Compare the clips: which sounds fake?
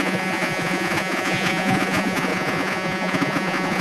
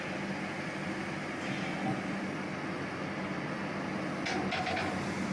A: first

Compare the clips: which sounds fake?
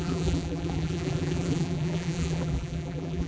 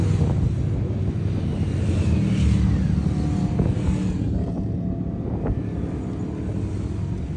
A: first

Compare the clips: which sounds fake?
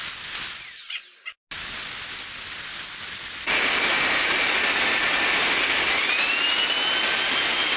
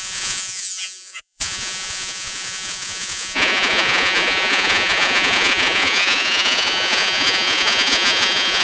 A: second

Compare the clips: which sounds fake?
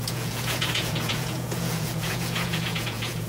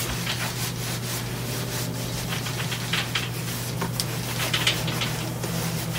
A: first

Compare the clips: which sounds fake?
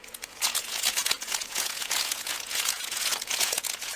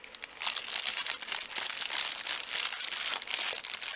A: first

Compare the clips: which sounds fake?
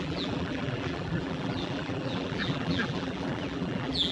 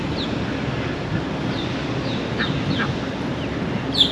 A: first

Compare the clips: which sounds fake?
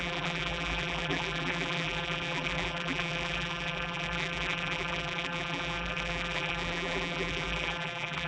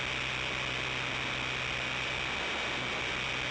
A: first